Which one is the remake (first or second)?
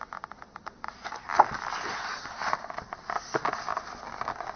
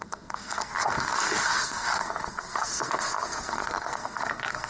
second